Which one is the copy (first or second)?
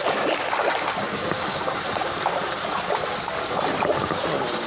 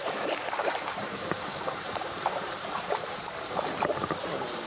second